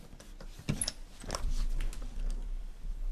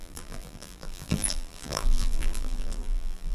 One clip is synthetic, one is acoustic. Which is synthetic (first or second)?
second